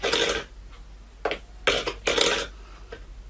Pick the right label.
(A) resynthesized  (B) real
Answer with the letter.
B